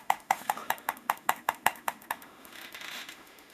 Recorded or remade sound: remade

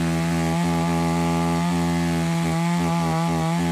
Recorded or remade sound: recorded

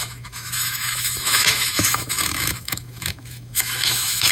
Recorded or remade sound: remade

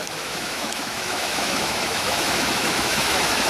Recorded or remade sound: remade